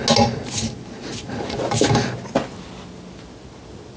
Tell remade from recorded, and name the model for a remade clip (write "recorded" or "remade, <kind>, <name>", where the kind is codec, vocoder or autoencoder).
recorded